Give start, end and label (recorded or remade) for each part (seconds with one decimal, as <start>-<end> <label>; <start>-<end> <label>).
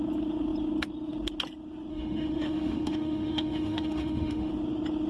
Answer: 0.0-1.9 recorded; 1.9-4.5 remade; 4.5-5.1 recorded